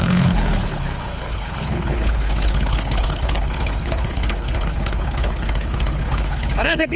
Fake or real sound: fake